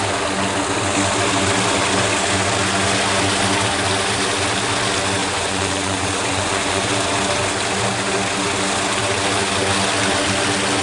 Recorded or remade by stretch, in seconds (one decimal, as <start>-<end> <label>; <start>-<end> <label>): 0.0-5.2 recorded; 5.2-6.9 remade; 6.9-10.8 recorded

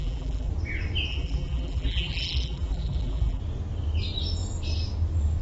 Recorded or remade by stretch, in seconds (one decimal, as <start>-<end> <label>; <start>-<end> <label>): 0.0-0.5 remade; 0.5-1.1 recorded; 1.1-3.4 remade; 3.4-5.4 recorded

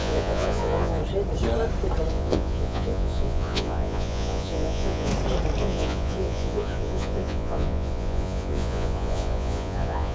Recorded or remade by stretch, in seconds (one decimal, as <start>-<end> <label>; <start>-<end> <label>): 0.0-1.0 remade; 1.0-2.1 recorded; 2.1-5.1 remade; 5.1-5.6 recorded; 5.6-10.1 remade

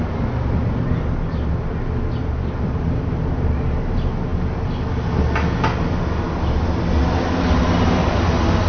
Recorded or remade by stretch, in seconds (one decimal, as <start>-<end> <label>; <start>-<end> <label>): 0.0-8.7 recorded

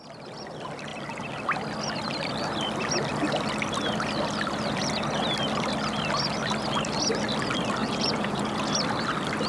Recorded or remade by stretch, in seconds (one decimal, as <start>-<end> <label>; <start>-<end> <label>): 0.0-7.8 recorded; 7.8-8.7 remade; 8.7-9.5 recorded

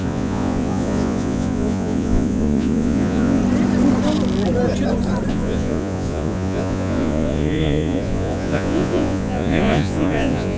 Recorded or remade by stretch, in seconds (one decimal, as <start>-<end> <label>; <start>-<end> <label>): 0.0-3.4 remade; 3.4-5.3 recorded; 5.3-10.6 remade

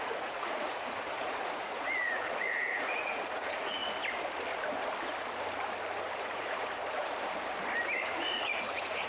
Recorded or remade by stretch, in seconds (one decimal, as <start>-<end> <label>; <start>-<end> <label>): 0.0-3.8 remade; 3.8-6.2 recorded; 6.2-6.8 remade; 6.8-8.0 recorded; 8.0-9.1 remade

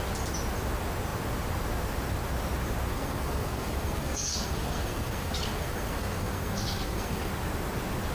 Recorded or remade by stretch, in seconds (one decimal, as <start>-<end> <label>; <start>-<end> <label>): 0.0-2.9 recorded; 2.9-7.3 remade; 7.3-8.1 recorded